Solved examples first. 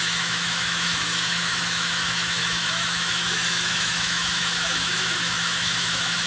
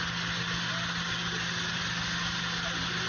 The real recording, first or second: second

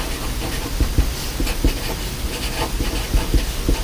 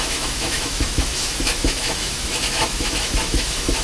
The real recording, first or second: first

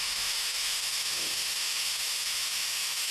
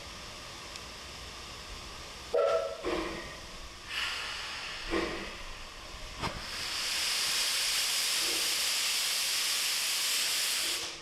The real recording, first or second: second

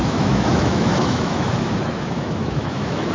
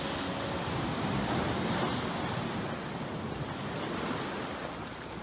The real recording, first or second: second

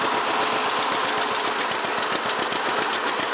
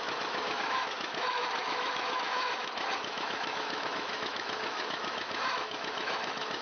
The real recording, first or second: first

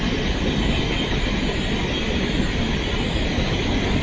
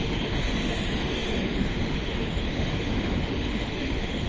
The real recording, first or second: first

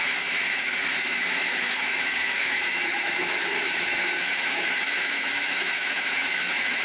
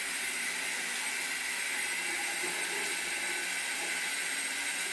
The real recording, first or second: second